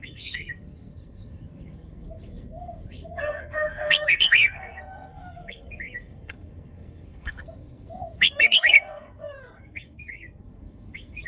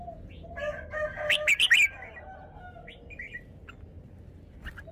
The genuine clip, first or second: second